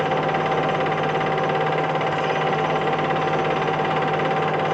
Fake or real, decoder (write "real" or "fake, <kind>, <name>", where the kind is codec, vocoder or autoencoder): real